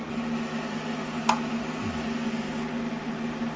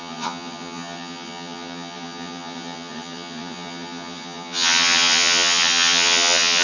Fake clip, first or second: second